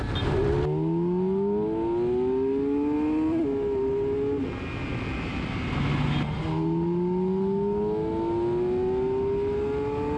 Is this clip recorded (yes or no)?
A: yes